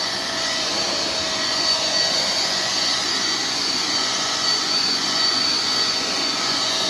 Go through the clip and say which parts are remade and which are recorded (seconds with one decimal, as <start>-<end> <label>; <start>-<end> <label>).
0.0-0.7 remade; 0.7-1.4 recorded; 1.4-6.9 remade